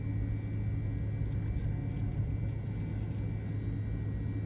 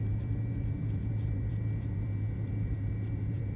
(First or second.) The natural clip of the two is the first